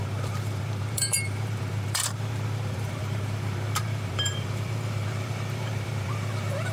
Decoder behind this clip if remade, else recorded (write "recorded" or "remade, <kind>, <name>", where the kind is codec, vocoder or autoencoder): remade, vocoder, BigVGAN v2